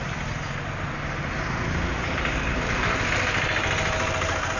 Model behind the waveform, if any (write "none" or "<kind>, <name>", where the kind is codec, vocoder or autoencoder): none